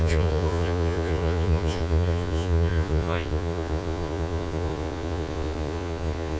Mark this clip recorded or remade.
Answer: remade